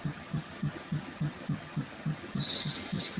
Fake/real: fake